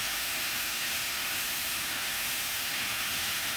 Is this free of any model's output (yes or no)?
no